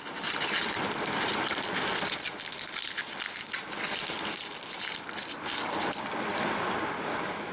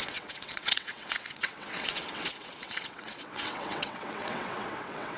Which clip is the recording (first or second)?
first